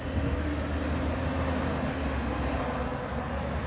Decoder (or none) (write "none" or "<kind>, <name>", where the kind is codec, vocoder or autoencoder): none